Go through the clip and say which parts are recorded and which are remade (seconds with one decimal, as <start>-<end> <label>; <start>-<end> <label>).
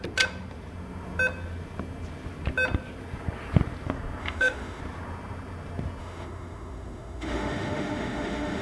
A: 0.0-4.2 recorded; 4.2-4.8 remade; 4.8-6.0 recorded; 6.0-8.6 remade